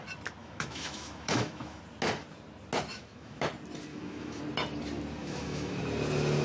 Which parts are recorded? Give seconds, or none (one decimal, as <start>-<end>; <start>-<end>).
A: 0.0-0.4; 1.8-2.9; 3.5-3.9; 4.4-5.2; 5.8-6.4